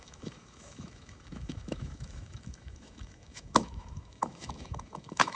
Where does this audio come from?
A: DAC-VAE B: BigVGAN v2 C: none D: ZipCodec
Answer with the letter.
A